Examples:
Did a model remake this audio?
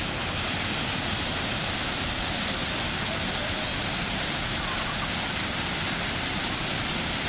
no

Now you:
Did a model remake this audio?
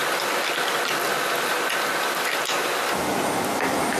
no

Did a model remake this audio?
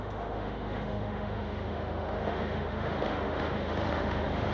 yes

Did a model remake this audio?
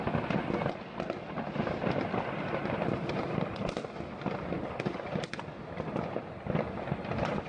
no